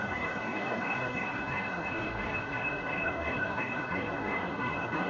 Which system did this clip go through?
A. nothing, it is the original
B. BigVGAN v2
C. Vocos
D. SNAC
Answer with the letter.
D